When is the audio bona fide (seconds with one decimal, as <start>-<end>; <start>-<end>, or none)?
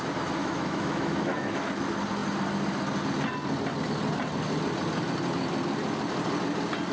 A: 0.0-0.4; 1.7-6.9